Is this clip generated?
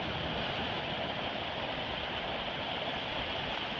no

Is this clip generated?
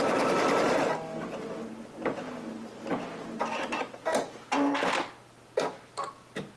no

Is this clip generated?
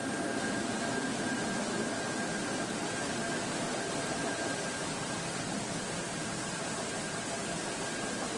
no